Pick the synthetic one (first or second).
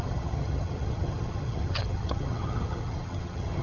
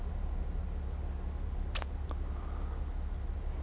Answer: first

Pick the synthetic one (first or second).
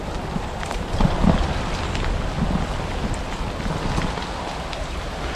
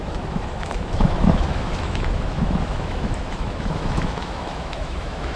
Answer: second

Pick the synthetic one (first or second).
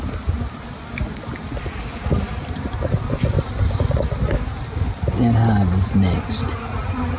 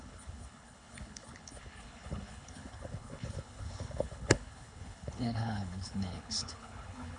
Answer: second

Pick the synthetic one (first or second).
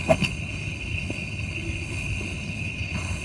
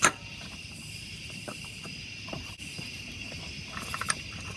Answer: first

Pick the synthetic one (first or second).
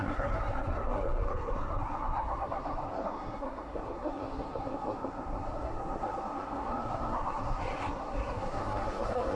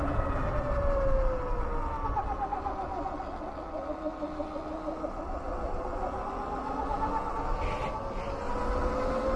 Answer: first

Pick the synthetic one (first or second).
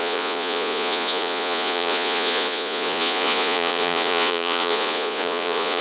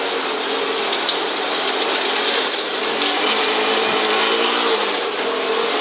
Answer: first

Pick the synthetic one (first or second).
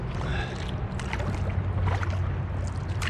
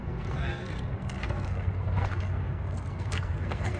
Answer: second